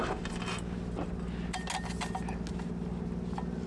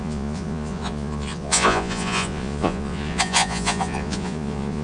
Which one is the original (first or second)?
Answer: first